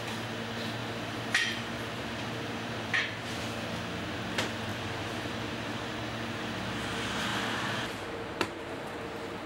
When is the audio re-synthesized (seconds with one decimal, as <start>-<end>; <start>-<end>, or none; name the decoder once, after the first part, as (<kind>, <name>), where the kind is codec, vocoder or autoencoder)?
0.8-3.4 (vocoder, BigVGAN v2); 4.7-5.9; 7.3-9.0